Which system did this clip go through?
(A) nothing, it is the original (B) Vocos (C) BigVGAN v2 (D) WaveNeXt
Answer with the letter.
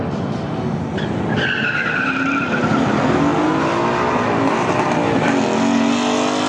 A